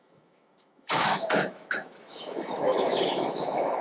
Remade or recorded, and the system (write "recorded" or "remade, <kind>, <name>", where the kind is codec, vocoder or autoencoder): remade, autoencoder, DAC-VAE